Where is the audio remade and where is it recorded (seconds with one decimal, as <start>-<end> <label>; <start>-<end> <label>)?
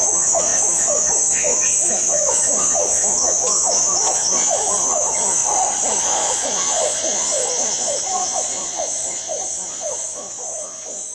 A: 0.0-5.4 remade; 5.4-6.0 recorded; 6.0-11.1 remade